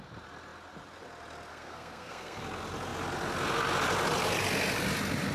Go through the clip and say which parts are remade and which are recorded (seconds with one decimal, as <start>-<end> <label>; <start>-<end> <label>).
0.0-1.5 recorded; 1.5-2.4 remade; 2.4-5.3 recorded